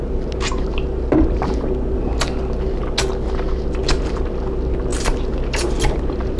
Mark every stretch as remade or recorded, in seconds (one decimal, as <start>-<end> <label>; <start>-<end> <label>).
0.0-6.4 recorded